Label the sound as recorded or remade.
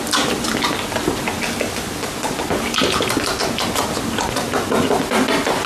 recorded